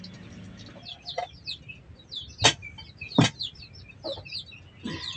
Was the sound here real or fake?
real